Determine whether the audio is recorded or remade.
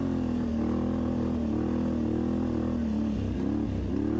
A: recorded